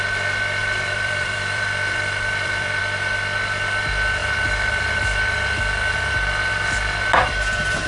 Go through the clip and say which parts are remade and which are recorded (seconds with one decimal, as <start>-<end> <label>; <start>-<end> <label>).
0.0-0.6 recorded; 0.6-2.8 remade; 2.8-4.2 recorded; 4.2-5.2 remade; 5.2-7.9 recorded